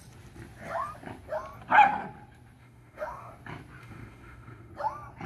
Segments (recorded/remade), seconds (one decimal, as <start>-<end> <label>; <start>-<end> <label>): 0.0-2.6 recorded; 2.6-3.3 remade; 3.3-3.8 recorded; 3.8-4.7 remade; 4.7-5.3 recorded

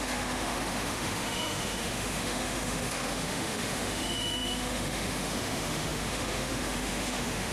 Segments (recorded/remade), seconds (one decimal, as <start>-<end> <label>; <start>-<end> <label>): 0.0-7.5 remade

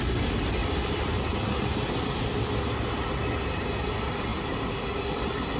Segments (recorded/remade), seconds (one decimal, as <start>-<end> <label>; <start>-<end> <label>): 0.0-0.6 recorded; 0.6-1.1 remade; 1.1-5.6 recorded

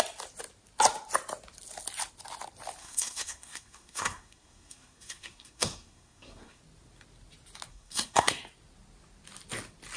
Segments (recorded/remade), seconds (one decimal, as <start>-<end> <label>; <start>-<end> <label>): 0.0-2.8 recorded; 2.8-6.6 remade; 6.6-7.7 recorded; 7.7-8.3 remade; 8.3-10.0 recorded

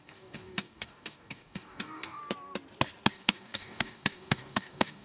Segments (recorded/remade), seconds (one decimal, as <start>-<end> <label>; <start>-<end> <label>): 0.0-2.2 remade; 2.2-3.1 recorded; 3.1-5.0 remade

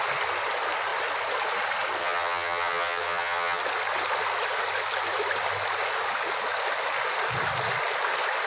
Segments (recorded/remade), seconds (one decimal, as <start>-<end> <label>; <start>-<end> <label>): 0.0-2.0 recorded; 2.0-3.6 remade; 3.6-8.5 recorded

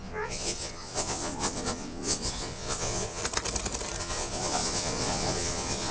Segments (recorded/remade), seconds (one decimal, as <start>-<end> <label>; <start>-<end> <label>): 0.0-3.2 remade; 3.2-4.0 recorded; 4.0-5.9 remade